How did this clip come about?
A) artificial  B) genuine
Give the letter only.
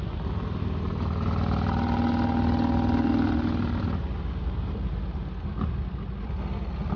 B